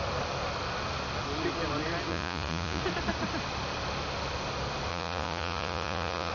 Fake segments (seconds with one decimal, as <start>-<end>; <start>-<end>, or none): 2.1-2.8; 4.9-6.3